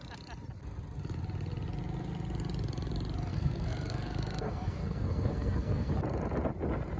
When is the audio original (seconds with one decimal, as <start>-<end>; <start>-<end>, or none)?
0.0-3.3; 5.9-7.0

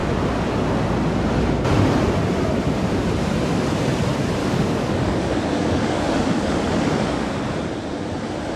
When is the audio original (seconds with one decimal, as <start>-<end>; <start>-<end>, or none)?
0.0-4.4; 7.3-8.6